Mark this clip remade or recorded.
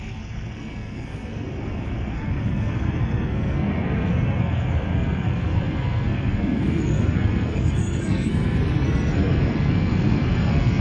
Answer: remade